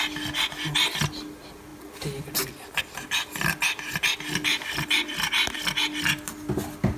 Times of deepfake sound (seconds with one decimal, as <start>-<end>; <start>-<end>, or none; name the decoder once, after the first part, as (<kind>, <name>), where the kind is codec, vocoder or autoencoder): none